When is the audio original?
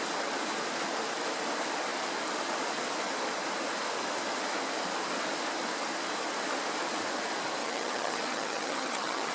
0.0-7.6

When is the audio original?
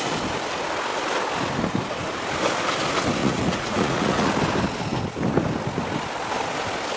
0.0-3.2; 4.3-7.0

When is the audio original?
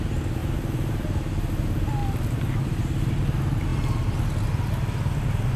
0.0-5.6